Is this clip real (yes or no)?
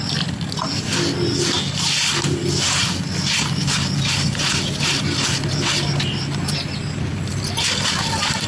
yes